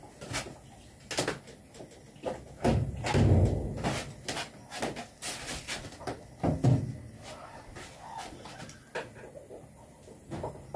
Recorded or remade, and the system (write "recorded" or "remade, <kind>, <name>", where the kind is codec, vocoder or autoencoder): recorded